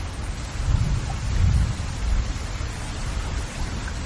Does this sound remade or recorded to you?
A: recorded